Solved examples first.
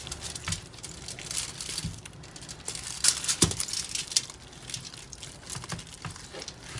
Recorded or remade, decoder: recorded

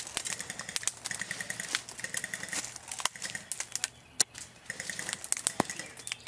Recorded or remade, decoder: recorded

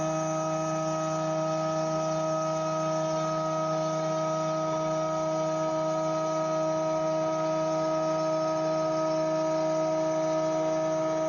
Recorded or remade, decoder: recorded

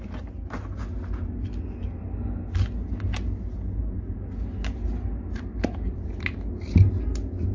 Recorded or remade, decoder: recorded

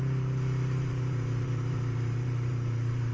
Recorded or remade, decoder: remade, vocoder, BigVGAN v2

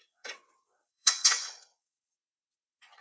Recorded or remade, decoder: remade, vocoder, WaveNeXt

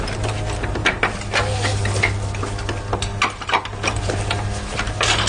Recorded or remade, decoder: recorded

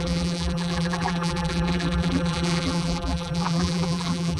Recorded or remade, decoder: remade, vocoder, BigVGAN v2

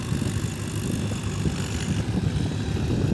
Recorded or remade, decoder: recorded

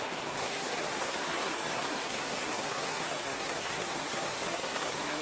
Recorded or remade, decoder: remade, codec, SNAC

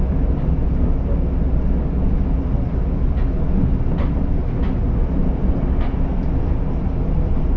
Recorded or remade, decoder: recorded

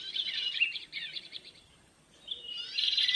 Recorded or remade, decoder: remade, vocoder, BigVGAN v2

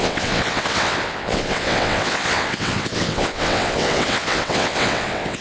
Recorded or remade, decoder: remade, vocoder, WaveNeXt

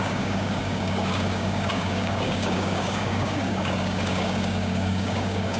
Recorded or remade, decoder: remade, codec, DAC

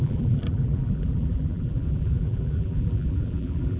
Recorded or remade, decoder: remade, vocoder, BigVGAN v2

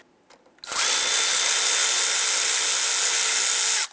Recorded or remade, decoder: recorded